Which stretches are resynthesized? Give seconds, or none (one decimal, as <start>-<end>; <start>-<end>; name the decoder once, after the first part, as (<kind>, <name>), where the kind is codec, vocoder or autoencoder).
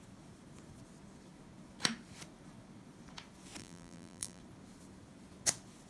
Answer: 3.6-4.4 (vocoder, BigVGAN v2)